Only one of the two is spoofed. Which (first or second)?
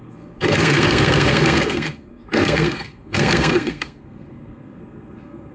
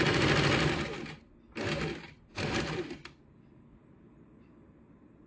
first